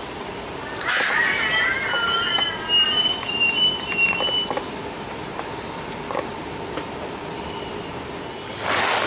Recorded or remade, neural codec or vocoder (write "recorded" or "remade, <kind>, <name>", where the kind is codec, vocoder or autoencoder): recorded